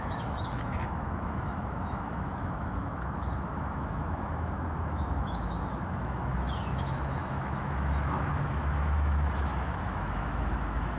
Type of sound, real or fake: fake